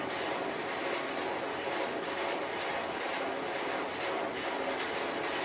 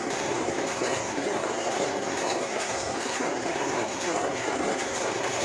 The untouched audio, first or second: first